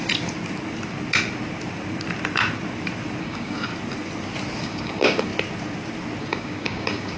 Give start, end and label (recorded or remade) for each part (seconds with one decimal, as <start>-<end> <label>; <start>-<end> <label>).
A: 0.0-3.2 recorded; 3.2-3.7 remade; 3.7-4.6 recorded; 4.6-5.3 remade; 5.3-6.2 recorded; 6.2-7.2 remade